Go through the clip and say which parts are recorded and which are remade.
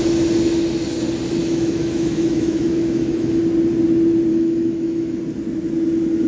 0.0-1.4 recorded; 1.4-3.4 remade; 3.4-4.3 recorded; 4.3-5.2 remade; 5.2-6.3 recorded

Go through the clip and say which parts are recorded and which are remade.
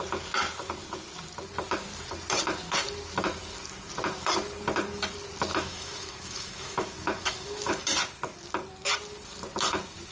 0.0-5.5 recorded; 5.5-7.7 remade; 7.7-10.1 recorded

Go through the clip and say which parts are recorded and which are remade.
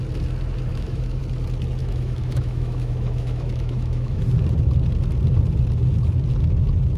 0.0-0.7 recorded; 0.7-1.2 remade; 1.2-1.8 recorded; 1.8-4.2 remade; 4.2-7.0 recorded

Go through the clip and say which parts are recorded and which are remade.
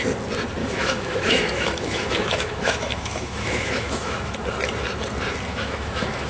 0.0-0.6 recorded; 0.6-4.4 remade; 4.4-5.5 recorded; 5.5-6.3 remade